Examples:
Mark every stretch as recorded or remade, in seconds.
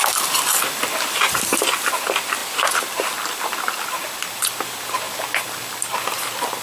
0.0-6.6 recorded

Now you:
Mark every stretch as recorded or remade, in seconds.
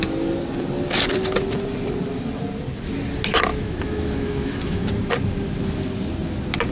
0.0-3.5 recorded; 3.5-4.9 remade; 4.9-6.7 recorded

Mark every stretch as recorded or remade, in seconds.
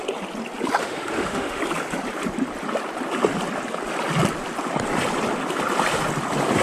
0.0-0.8 recorded; 0.8-1.6 remade; 1.6-6.6 recorded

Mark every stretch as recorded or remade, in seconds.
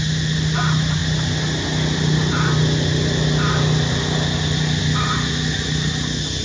0.0-6.4 recorded